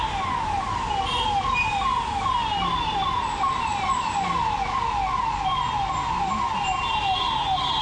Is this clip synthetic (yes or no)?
no